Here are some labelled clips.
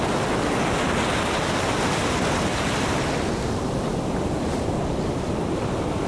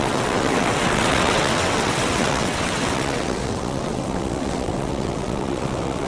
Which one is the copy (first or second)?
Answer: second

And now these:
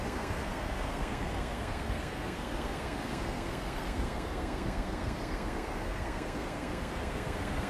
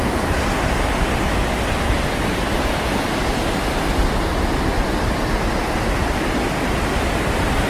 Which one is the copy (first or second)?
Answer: first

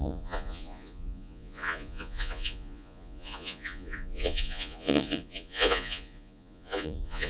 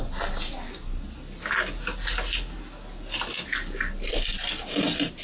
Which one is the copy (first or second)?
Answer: first